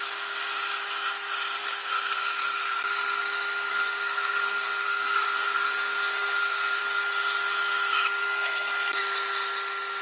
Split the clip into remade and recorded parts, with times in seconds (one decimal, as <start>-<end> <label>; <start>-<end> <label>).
0.0-1.6 recorded; 1.6-2.6 remade; 2.6-3.7 recorded; 3.7-6.8 remade; 6.8-8.2 recorded; 8.2-9.0 remade; 9.0-10.0 recorded